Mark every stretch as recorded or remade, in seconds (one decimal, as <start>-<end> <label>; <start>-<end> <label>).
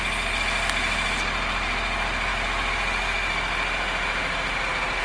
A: 0.0-5.0 recorded